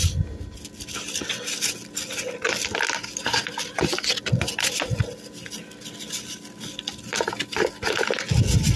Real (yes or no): yes